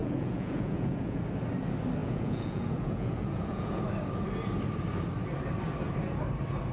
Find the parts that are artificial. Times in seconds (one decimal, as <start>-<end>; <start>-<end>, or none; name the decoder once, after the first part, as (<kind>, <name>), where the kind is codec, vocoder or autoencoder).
0.0-1.2 (vocoder, Vocos); 2.0-3.8